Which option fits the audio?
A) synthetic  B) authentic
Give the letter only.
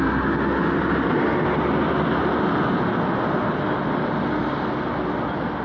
B